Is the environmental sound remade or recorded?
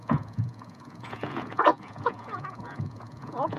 remade